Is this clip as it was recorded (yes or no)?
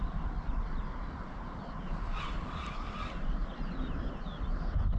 yes